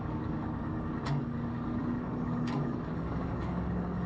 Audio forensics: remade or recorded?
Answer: remade